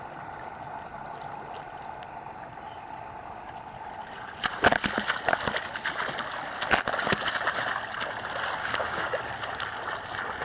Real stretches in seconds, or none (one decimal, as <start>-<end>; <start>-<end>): 0.0-8.6; 9.2-10.4